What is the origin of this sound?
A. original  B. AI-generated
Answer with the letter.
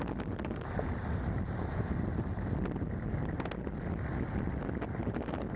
A